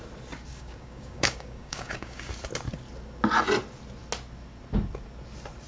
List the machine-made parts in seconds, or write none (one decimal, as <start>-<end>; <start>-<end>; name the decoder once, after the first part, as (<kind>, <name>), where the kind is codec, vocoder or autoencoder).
0.5-2.3 (codec, DAC)